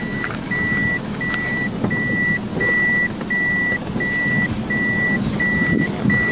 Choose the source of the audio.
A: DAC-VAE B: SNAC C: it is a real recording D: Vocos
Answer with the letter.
C